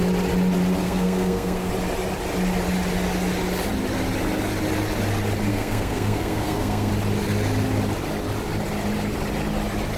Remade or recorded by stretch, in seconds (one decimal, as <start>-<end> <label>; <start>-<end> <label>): 0.0-0.8 recorded; 0.8-1.7 remade; 1.7-5.5 recorded; 5.5-6.9 remade; 6.9-10.0 recorded